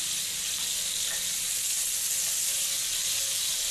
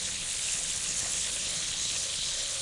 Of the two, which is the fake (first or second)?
second